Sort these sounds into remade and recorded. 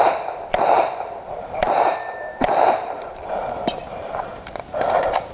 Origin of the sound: remade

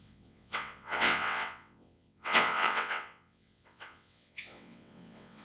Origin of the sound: remade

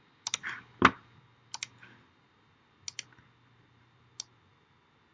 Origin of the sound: recorded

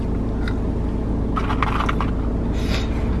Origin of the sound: recorded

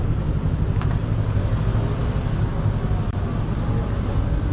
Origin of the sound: recorded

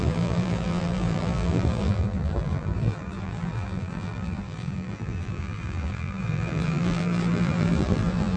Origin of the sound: remade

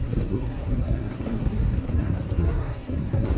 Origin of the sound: remade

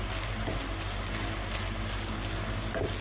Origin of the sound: recorded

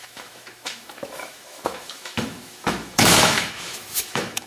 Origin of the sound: remade